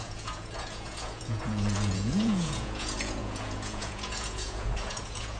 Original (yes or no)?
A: no